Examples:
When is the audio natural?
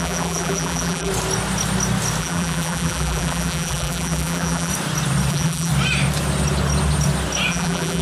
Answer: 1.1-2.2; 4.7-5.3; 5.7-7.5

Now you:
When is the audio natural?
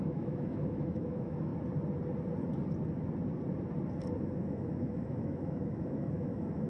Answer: 1.5-4.2